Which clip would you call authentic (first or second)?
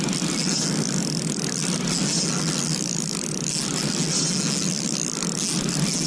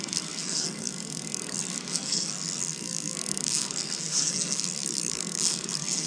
first